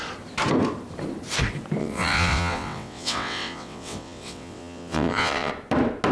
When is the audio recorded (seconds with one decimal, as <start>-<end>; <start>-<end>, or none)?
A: 0.0-1.8; 5.5-6.1